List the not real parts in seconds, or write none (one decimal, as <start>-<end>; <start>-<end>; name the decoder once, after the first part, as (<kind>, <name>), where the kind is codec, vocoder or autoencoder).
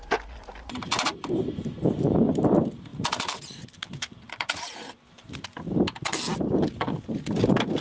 none